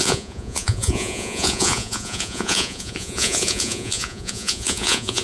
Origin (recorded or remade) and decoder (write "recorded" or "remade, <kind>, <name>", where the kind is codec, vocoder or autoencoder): remade, vocoder, Vocos